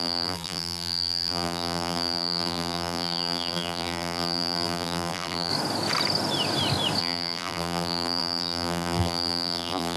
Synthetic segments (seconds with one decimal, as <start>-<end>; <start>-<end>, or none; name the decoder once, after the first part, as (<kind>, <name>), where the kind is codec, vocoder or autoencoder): 0.0-5.5 (vocoder, BigVGAN v2); 7.0-10.0

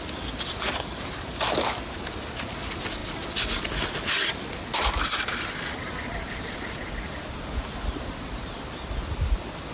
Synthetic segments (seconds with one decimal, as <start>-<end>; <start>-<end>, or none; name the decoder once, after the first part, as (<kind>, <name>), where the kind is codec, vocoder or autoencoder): none

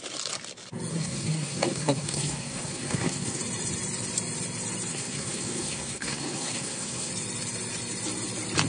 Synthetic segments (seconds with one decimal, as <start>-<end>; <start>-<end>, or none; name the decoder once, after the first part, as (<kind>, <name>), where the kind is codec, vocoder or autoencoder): 0.9-3.4 (codec, SNAC); 4.9-7.1

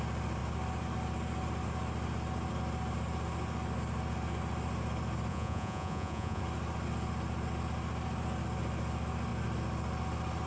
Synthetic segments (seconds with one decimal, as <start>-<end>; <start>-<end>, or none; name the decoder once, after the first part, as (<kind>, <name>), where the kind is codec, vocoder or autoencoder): 5.3-6.4 (vocoder, Vocos)

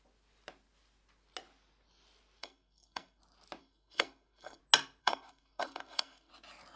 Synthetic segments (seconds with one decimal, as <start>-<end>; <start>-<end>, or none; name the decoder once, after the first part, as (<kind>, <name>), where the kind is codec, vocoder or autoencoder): 2.4-3.2 (codec, SNAC); 3.6-4.6; 5.0-6.3

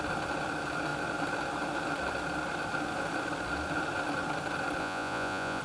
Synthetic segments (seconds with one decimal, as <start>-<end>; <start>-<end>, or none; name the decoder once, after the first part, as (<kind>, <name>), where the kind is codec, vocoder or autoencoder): 4.8-5.6 (vocoder, Vocos)

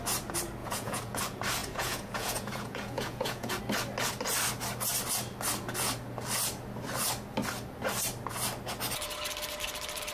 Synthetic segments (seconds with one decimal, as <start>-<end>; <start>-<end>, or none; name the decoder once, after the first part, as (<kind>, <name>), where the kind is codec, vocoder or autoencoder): 0.6-1.2 (vocoder, Vocos); 1.6-3.6